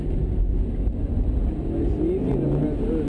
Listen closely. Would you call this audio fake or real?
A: real